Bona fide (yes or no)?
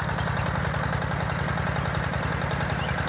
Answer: yes